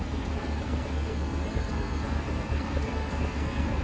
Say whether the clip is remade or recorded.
remade